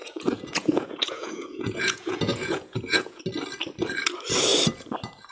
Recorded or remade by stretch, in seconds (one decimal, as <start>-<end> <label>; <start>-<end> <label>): 0.0-3.2 remade; 3.2-5.3 recorded